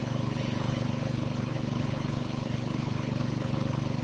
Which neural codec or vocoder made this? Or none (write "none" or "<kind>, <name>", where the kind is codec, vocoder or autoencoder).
codec, HILCodec